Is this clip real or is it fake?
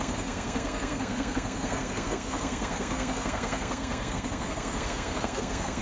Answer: fake